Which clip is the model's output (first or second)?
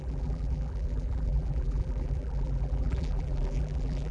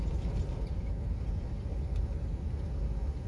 first